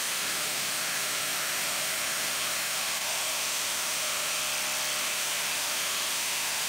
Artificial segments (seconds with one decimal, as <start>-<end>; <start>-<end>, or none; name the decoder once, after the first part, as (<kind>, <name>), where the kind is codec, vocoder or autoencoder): 0.0-4.4 (autoencoder, DAC-VAE); 5.0-6.7